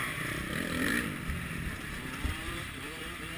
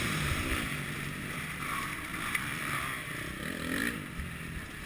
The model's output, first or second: first